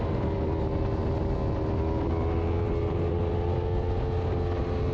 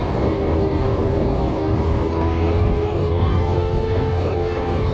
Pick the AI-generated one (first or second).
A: second